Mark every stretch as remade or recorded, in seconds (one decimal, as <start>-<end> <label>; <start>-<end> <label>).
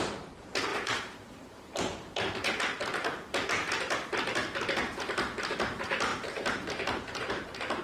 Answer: 0.0-3.0 remade; 3.0-5.2 recorded; 5.2-7.8 remade